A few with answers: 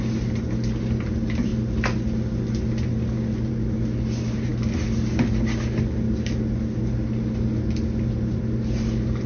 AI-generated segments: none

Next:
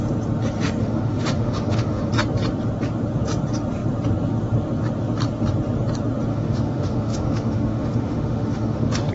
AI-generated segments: 0.8-2.1 (autoencoder, DAC-VAE); 6.3-9.1

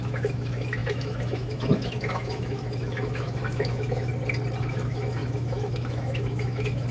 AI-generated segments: 0.0-4.1 (autoencoder, DAC-VAE); 4.6-6.9

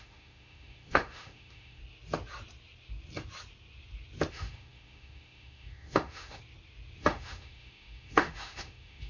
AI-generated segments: 0.0-1.8 (autoencoder, DAC-VAE); 4.3-6.4; 7.0-9.1

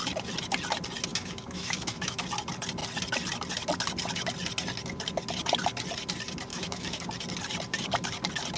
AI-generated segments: 1.1-2.2 (autoencoder, DAC-VAE); 6.5-7.0

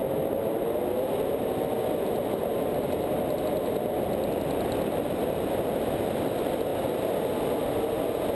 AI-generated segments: none